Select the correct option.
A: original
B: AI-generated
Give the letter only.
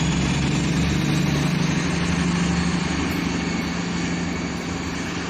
A